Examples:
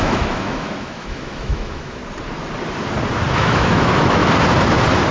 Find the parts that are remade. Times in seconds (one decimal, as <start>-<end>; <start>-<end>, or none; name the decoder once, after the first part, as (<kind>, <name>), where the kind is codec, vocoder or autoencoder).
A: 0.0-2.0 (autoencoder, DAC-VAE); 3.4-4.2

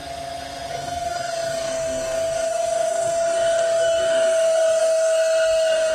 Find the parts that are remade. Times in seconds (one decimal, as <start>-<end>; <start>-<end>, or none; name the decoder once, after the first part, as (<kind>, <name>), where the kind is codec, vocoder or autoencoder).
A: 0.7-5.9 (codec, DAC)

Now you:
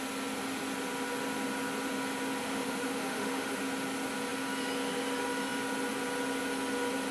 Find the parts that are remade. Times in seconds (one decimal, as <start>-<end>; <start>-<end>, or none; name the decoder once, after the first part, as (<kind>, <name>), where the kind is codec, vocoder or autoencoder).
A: 2.4-3.6 (autoencoder, DAC-VAE)

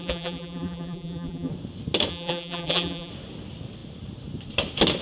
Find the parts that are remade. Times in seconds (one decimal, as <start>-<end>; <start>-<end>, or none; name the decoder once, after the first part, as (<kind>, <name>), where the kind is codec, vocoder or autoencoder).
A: 0.0-1.5 (vocoder, BigVGAN v2); 2.1-3.1

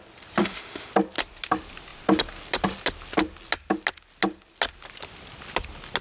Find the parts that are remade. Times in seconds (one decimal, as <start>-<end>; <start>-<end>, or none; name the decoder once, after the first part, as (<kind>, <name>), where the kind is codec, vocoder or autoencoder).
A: 0.4-0.9 (autoencoder, DAC-VAE)

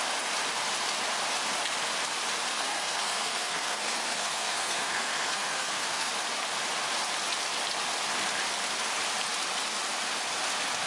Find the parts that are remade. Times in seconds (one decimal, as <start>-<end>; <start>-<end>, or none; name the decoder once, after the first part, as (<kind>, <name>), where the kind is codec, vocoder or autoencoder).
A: 2.5-6.1 (codec, SNAC)

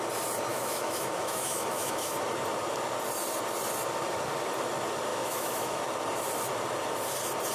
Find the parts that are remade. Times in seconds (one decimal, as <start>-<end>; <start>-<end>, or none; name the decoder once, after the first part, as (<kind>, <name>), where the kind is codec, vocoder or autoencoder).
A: 0.5-2.1 (autoencoder, DAC-VAE); 5.1-5.8

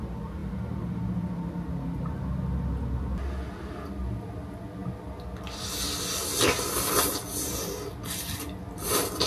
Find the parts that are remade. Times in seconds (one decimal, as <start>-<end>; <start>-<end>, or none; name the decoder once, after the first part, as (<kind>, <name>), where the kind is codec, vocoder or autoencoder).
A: none